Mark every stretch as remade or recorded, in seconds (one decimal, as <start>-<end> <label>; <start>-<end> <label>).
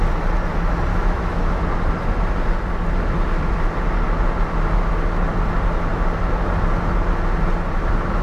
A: 0.0-0.9 recorded; 0.9-1.5 remade; 1.5-8.2 recorded